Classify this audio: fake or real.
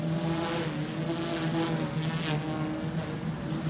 real